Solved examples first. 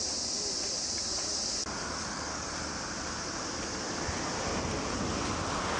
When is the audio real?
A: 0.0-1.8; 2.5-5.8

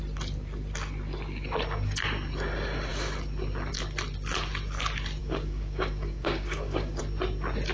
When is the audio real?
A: 0.0-5.2; 7.0-7.7

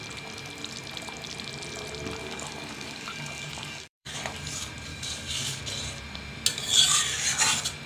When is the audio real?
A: 0.0-2.2; 4.2-4.9; 5.6-7.9

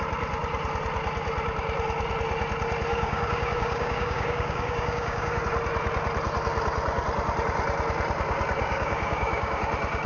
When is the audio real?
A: 0.0-2.9; 5.4-8.6; 9.6-10.1

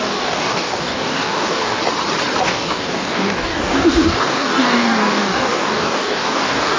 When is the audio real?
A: 1.8-2.4